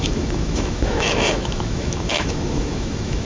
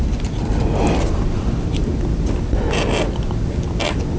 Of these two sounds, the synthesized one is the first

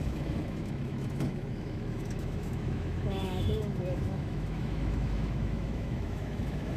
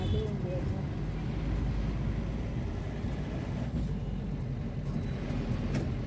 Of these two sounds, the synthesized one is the first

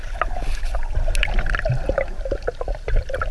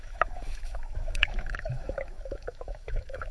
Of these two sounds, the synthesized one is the second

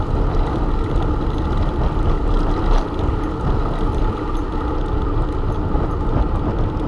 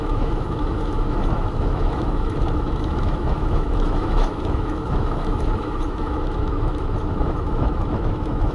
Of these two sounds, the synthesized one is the second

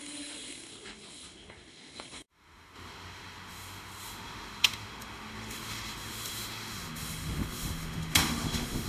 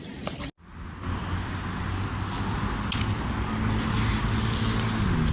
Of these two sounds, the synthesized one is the first